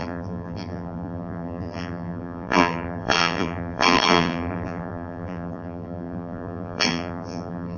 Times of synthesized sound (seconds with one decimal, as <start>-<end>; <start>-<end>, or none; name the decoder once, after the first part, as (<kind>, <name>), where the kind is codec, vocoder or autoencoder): 0.0-7.8 (vocoder, BigVGAN v2)